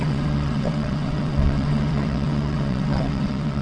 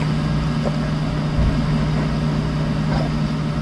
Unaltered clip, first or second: second